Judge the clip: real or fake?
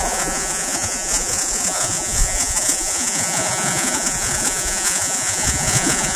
fake